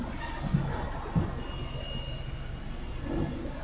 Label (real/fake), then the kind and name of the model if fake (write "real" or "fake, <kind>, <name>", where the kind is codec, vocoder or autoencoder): real